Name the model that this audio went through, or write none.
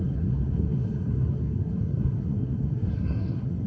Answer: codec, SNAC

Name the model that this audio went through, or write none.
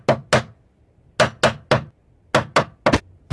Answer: none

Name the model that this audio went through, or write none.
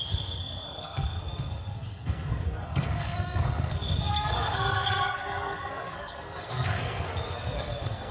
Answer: codec, SNAC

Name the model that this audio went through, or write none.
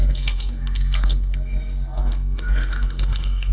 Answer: codec, SNAC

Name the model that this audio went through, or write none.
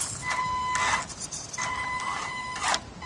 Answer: none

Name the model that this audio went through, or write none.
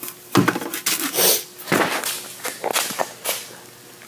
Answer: none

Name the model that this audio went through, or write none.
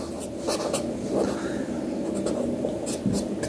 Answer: none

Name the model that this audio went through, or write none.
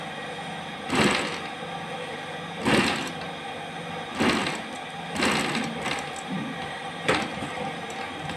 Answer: none